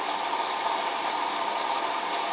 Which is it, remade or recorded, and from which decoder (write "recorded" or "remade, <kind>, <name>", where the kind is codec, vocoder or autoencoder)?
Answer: recorded